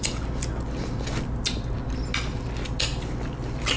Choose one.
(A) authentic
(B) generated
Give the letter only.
A